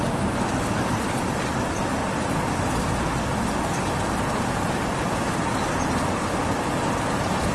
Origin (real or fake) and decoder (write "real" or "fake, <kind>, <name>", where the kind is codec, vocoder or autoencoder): real